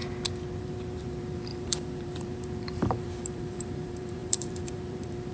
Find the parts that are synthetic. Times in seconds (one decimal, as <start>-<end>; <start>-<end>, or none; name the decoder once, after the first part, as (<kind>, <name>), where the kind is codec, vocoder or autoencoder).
0.6-5.3 (vocoder, BigVGAN v2)